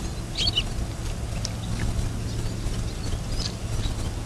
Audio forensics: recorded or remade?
recorded